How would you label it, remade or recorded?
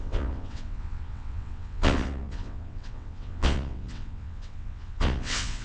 remade